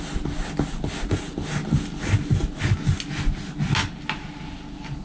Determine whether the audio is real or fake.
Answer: real